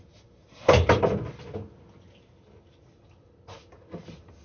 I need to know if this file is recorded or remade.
recorded